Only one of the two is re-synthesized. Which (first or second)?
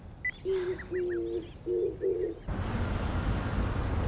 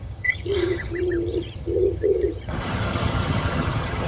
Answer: second